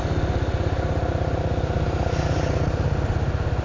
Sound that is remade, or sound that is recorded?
recorded